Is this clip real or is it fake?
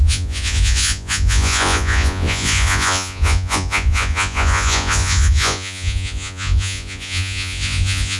fake